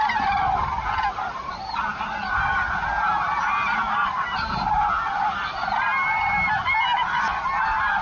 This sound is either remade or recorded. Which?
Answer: recorded